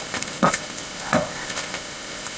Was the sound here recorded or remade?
remade